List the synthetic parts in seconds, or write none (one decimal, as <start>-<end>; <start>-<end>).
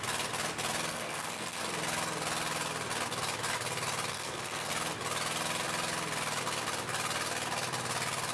0.9-1.6; 4.1-4.7